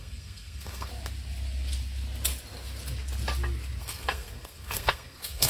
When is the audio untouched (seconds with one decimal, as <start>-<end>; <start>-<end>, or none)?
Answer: 0.9-3.8